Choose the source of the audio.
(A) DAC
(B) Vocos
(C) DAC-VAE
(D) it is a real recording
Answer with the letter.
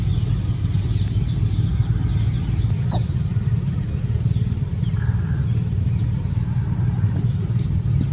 D